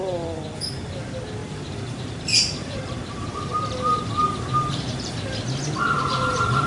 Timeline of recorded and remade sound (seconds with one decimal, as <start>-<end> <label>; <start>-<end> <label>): 0.0-1.4 recorded; 1.4-5.4 remade; 5.4-6.7 recorded